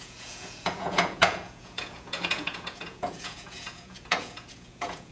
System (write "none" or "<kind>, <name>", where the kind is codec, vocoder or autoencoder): vocoder, Vocos